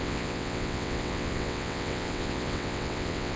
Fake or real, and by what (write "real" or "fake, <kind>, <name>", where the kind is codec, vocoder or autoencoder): fake, vocoder, WaveNeXt